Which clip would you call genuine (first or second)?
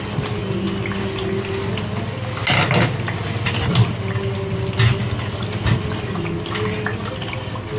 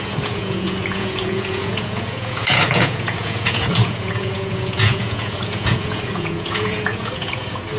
first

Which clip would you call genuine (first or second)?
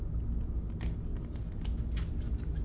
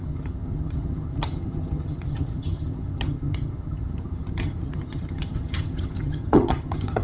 first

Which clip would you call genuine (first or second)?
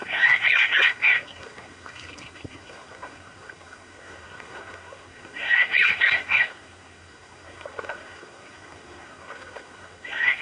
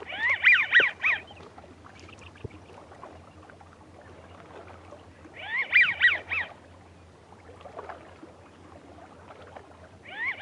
second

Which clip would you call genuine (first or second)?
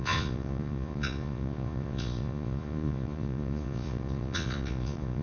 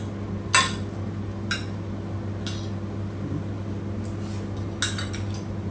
second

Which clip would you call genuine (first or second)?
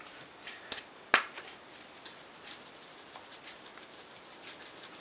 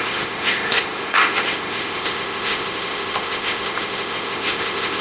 first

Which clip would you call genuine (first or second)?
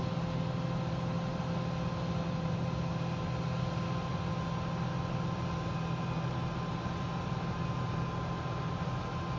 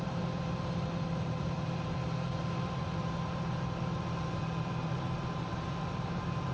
first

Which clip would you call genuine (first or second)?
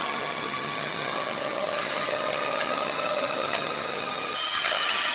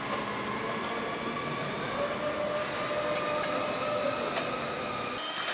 second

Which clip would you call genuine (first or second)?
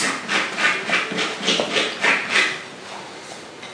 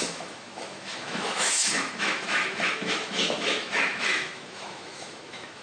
first